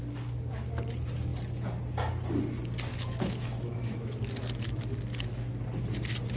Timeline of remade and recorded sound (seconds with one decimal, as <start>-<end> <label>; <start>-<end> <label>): 0.0-2.9 recorded; 2.9-4.2 remade; 4.2-6.4 recorded